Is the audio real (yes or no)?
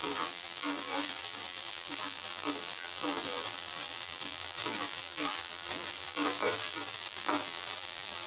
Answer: no